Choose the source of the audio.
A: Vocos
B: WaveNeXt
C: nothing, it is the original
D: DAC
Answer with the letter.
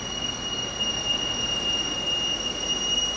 C